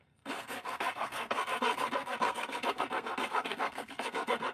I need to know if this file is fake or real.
fake